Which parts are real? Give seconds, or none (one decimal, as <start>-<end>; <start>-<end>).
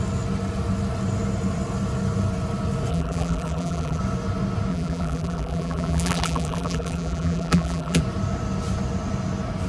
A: 0.0-2.9; 4.0-4.7; 8.0-9.7